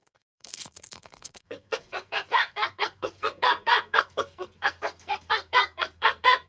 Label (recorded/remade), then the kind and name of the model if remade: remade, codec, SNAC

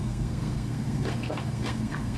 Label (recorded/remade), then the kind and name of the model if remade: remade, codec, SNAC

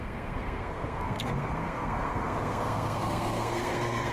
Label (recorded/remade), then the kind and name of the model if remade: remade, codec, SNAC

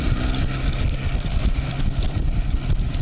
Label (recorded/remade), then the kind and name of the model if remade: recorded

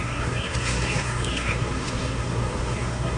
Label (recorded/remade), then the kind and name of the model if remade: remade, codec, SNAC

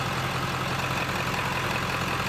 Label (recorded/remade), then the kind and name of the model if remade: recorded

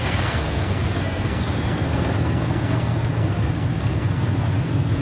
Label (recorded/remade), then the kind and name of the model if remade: remade, codec, SNAC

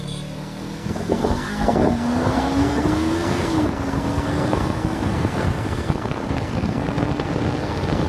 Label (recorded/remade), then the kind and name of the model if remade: remade, codec, SNAC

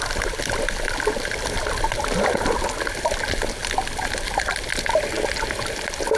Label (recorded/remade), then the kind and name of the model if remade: recorded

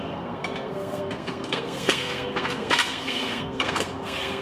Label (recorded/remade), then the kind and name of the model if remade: remade, codec, SNAC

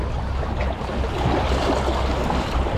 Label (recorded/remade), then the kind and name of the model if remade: recorded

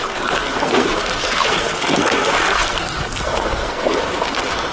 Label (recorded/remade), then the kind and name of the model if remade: remade, codec, SNAC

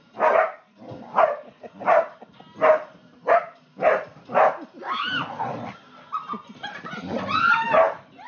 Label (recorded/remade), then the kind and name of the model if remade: recorded